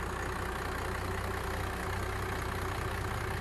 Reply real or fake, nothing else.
real